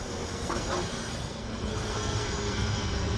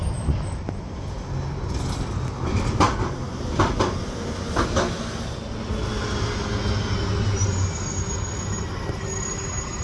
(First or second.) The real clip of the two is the second